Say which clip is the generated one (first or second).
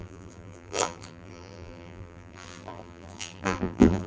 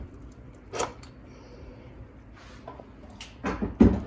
first